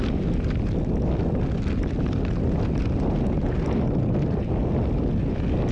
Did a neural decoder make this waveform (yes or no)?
no